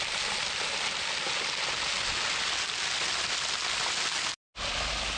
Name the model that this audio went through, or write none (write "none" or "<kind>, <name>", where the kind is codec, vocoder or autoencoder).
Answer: none